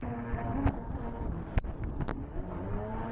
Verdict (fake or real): real